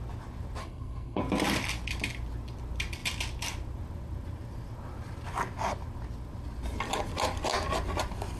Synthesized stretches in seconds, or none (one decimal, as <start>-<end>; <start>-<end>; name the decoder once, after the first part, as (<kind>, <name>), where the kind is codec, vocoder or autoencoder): 0.6-1.2 (codec, SNAC)